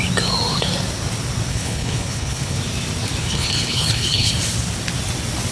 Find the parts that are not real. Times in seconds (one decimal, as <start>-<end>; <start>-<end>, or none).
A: 1.5-2.6; 3.2-4.3